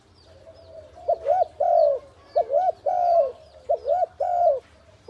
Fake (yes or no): no